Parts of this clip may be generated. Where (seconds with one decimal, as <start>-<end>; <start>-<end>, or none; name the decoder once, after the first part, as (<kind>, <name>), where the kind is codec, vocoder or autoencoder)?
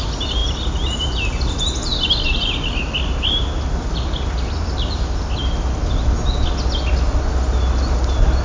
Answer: none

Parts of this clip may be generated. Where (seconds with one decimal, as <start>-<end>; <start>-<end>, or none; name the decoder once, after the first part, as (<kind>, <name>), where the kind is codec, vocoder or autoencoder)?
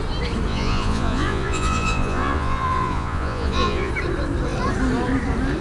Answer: 0.5-3.9 (vocoder, Vocos)